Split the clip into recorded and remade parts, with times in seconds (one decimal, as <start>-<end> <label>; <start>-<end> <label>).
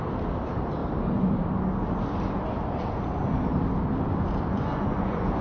0.0-4.5 recorded; 4.5-5.4 remade